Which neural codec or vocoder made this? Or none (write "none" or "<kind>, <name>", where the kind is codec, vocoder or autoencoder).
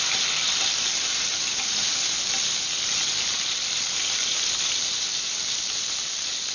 none